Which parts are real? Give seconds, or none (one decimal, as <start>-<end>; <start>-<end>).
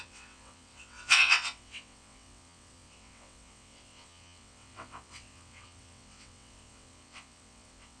none